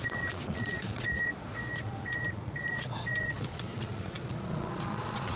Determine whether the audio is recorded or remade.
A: remade